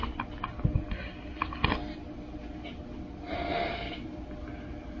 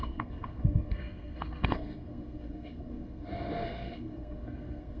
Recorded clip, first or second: first